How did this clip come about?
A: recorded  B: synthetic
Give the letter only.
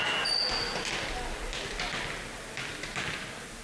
A